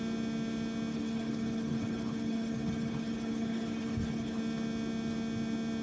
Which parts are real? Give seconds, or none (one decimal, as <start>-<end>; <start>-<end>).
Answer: 0.0-0.9; 4.4-5.8